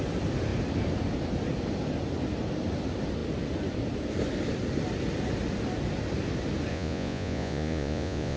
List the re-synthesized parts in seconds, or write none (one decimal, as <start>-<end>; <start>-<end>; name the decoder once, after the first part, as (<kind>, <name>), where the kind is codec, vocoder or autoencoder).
6.7-8.4 (vocoder, Vocos)